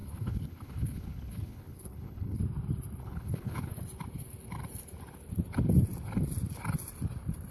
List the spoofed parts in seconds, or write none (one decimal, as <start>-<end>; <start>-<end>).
0.0-2.4; 3.0-3.7